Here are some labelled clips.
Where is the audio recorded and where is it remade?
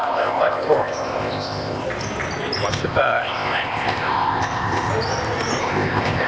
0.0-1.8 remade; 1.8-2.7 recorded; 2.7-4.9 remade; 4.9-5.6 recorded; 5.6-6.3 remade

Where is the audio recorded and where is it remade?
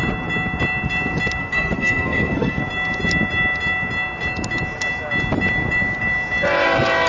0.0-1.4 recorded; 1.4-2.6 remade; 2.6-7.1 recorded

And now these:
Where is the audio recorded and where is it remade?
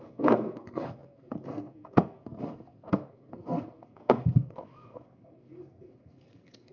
0.0-6.7 remade